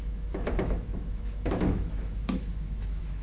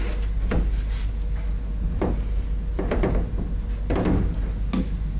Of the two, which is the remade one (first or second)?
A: first